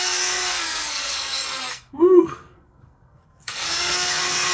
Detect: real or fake fake